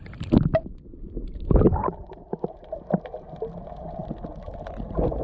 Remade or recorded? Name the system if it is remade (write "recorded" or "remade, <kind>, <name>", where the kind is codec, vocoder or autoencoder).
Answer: recorded